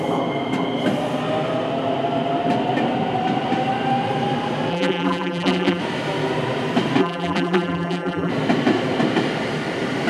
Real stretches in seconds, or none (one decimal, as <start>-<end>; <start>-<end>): 0.0-4.7; 5.8-7.0; 8.3-10.1